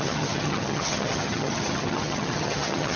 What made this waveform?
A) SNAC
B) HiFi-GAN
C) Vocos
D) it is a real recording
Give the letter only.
B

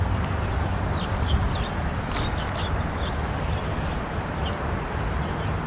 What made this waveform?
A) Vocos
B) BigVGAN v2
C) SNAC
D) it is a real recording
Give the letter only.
D